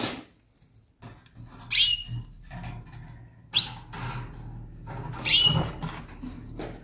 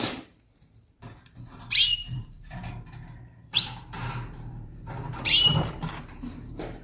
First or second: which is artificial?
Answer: second